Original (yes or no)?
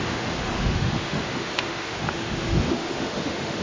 no